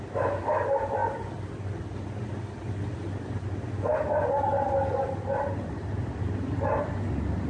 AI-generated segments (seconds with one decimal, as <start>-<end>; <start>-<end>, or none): 5.5-6.0